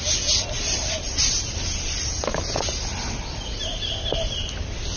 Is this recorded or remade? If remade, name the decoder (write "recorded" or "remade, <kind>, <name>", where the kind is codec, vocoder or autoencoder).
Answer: recorded